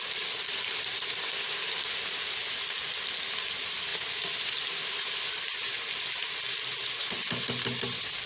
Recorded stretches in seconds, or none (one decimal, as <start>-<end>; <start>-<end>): 0.0-8.3